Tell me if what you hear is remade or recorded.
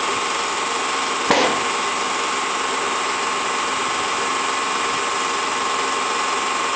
recorded